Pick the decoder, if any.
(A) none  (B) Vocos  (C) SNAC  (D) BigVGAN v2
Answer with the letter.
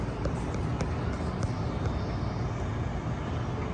A